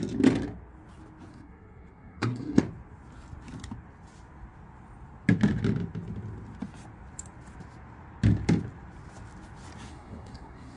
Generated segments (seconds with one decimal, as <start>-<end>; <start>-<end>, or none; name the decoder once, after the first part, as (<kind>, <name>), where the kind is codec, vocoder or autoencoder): 1.3-2.6 (codec, SNAC); 9.9-10.8

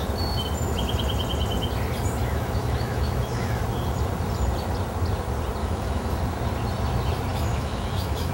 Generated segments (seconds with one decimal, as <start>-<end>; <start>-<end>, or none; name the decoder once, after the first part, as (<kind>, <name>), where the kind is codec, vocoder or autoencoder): 2.2-3.6 (autoencoder, DAC-VAE); 5.6-6.1; 7.3-8.3

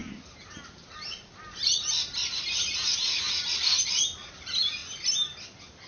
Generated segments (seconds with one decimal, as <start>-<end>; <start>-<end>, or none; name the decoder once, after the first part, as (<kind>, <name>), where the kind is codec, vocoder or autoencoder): none

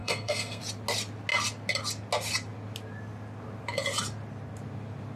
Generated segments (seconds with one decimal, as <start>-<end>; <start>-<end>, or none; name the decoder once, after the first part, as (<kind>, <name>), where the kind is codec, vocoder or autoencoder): 0.0-0.6 (codec, SNAC)